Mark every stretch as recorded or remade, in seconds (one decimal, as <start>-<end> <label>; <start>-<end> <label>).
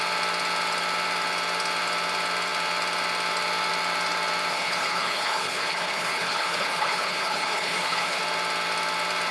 0.0-4.5 recorded; 4.5-8.2 remade; 8.2-9.3 recorded